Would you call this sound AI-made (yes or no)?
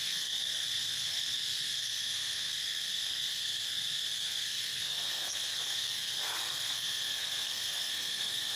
yes